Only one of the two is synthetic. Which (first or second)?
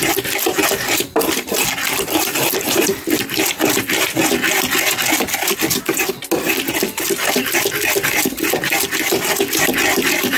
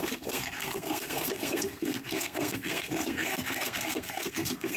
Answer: second